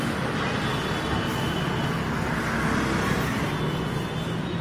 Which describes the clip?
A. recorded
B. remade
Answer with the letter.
A